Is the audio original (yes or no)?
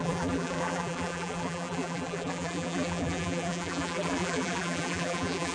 no